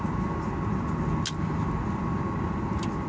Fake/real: real